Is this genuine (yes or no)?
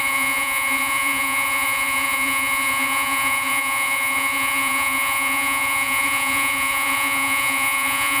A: no